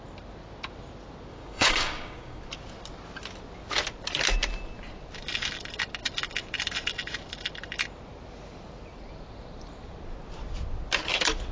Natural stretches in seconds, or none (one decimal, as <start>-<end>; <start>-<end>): 0.0-1.3; 2.4-11.5